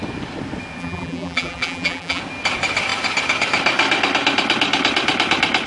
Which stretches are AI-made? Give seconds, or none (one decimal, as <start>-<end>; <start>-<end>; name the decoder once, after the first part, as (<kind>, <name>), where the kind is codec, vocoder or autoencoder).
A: 0.8-2.2 (vocoder, BigVGAN v2)